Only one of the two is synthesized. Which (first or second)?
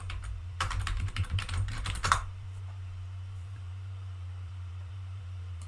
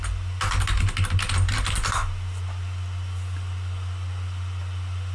first